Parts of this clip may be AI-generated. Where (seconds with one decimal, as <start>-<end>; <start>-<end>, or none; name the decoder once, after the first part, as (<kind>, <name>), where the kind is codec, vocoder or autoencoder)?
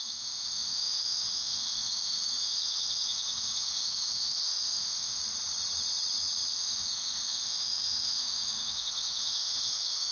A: 0.0-5.2 (autoencoder, DAC-VAE); 6.5-10.1